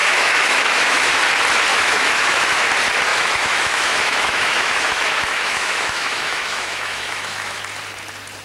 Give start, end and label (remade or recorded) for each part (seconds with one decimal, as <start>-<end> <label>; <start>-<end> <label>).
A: 0.0-1.2 remade; 1.2-1.7 recorded; 1.7-2.7 remade; 2.7-3.1 recorded; 3.1-7.6 remade; 7.6-8.4 recorded